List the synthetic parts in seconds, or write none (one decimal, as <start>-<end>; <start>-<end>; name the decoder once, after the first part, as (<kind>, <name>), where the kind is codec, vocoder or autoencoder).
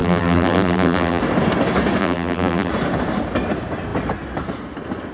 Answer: 0.0-1.2 (vocoder, BigVGAN v2); 2.0-2.7